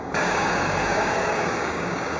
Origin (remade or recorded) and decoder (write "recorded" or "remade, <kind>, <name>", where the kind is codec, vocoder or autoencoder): remade, codec, DAC